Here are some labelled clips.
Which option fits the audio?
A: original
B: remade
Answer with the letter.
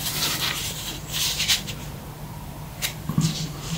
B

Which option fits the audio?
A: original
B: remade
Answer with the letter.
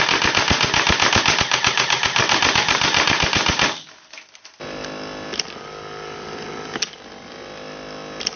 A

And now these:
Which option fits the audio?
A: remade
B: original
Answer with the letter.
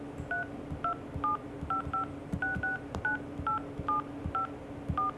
B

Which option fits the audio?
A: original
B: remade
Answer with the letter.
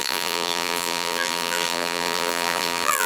B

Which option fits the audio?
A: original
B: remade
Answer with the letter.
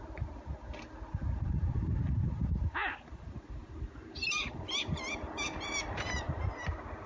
B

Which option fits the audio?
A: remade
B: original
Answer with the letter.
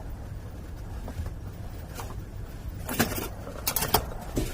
B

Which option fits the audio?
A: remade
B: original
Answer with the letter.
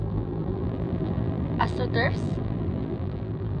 A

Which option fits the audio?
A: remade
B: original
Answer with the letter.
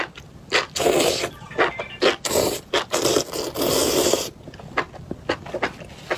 B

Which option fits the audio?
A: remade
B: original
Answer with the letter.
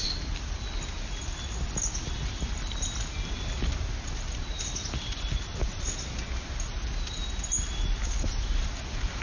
B